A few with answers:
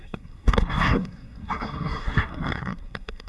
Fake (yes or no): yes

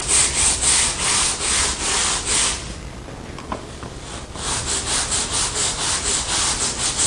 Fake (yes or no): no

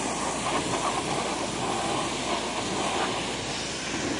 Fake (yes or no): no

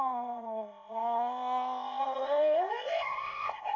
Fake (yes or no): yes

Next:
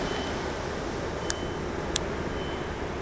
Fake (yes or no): no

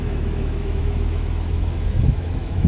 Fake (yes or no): yes